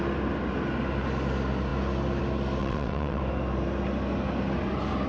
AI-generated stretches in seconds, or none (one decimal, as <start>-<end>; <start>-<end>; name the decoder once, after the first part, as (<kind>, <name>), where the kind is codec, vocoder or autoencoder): 2.6-3.2 (vocoder, WaveNeXt)